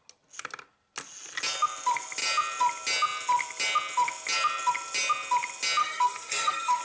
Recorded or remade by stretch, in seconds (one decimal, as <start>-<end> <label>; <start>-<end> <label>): 0.0-5.8 recorded; 5.8-6.8 remade